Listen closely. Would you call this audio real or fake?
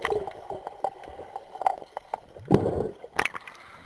real